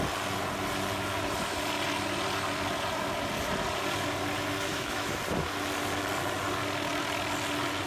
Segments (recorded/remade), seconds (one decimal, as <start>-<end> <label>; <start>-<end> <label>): 0.0-4.7 recorded; 4.7-5.2 remade; 5.2-7.9 recorded